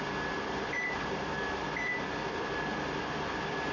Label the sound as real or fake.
real